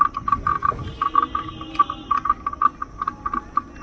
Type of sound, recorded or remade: recorded